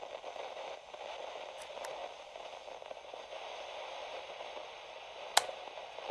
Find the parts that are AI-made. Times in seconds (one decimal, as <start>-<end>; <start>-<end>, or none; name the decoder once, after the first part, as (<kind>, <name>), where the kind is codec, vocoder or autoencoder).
none